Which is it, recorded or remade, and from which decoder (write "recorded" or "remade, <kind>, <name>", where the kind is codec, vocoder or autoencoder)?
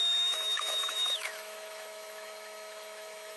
remade, autoencoder, DAC-VAE